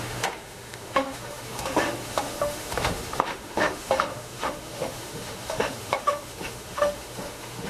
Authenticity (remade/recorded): remade